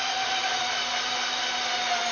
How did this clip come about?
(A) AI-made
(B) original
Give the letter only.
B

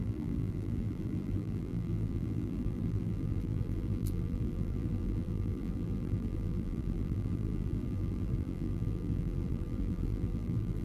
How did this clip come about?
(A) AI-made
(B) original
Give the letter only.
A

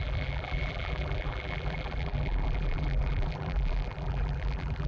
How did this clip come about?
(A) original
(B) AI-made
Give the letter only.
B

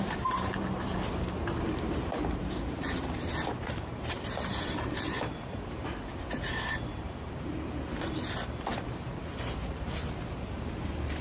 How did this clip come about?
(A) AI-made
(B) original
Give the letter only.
A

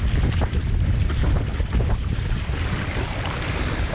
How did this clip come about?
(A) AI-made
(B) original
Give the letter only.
A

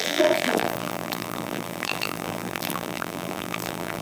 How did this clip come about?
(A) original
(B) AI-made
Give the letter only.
B